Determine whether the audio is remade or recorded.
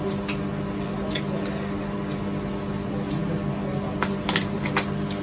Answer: recorded